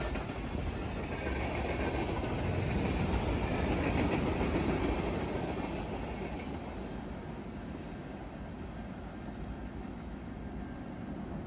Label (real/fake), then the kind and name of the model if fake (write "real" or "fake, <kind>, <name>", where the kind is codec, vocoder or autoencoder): real